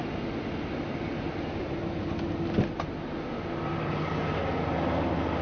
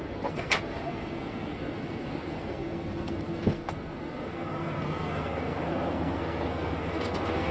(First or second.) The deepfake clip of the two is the second